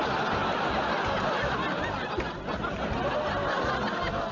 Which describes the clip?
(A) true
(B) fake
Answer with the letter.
A